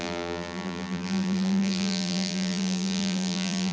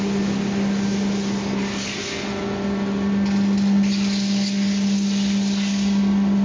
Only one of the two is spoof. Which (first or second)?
first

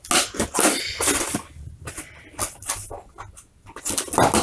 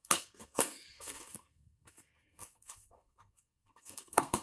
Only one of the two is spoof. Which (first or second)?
second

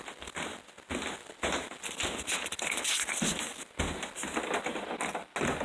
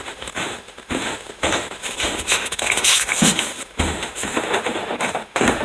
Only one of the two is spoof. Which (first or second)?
second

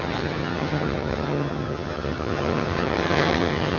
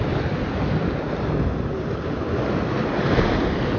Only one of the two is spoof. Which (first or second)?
first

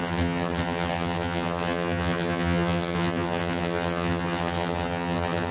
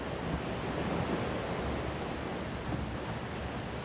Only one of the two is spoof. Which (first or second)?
first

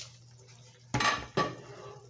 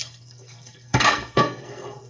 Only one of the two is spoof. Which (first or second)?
second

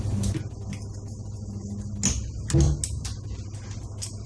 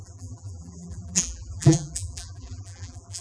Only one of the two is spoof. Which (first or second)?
second